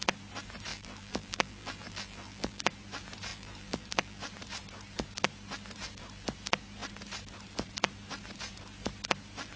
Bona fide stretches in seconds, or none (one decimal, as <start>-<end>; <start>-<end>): 0.0-0.7; 2.6-3.3; 4.2-9.6